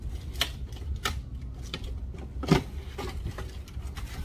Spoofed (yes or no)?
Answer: no